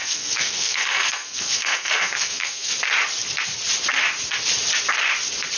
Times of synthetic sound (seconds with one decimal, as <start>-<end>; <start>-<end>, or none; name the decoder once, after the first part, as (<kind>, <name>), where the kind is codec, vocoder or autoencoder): 0.0-2.7 (codec, SNAC)